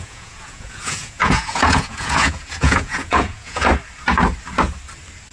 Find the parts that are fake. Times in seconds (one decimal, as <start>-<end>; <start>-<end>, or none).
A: 0.0-3.7